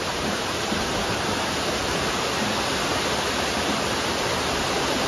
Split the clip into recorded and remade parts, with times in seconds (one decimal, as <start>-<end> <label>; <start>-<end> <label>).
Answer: 0.0-1.1 remade; 1.1-5.1 recorded